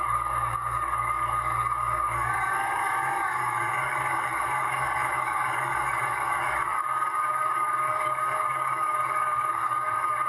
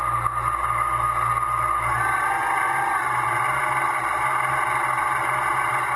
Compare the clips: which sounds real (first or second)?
second